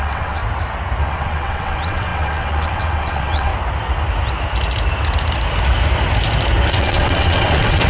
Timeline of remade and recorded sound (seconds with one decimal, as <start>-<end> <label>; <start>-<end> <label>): 0.0-0.4 remade; 0.4-1.0 recorded; 1.0-3.5 remade; 3.5-6.7 recorded; 6.7-7.9 remade